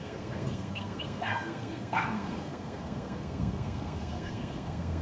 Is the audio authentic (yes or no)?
no